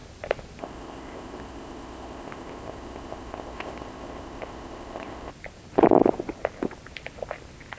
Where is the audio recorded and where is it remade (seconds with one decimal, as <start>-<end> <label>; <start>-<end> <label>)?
0.0-0.6 recorded; 0.6-5.3 remade; 5.3-7.8 recorded